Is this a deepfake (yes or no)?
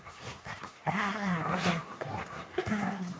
yes